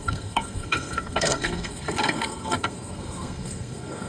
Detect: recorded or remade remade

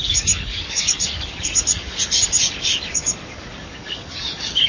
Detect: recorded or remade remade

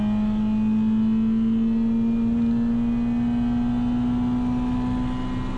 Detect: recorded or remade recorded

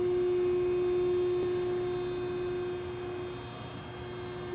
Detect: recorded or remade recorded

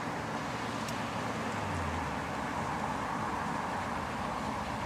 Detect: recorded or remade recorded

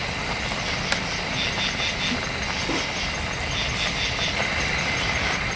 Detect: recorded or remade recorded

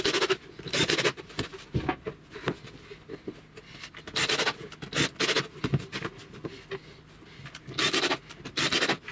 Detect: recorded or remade recorded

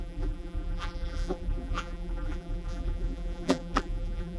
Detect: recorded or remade remade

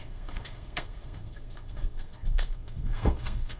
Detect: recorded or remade remade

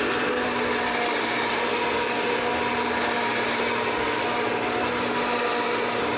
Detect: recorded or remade recorded